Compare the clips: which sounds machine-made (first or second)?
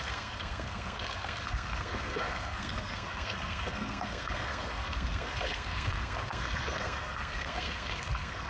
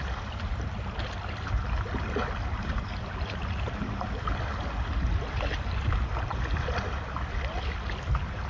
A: first